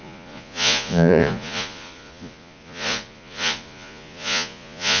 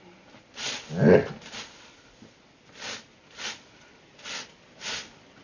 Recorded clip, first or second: second